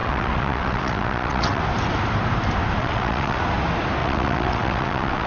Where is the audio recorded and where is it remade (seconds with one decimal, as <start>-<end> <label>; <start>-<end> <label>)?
0.0-1.6 remade; 1.6-2.8 recorded; 2.8-3.4 remade; 3.4-4.0 recorded; 4.0-5.3 remade